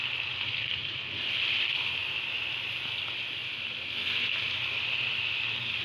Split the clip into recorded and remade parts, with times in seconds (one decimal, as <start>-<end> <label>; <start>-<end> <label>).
0.0-0.8 remade; 0.8-1.4 recorded; 1.4-2.0 remade; 2.0-2.6 recorded; 2.6-5.8 remade